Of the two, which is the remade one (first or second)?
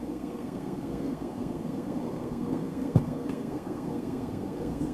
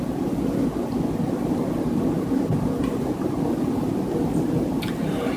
first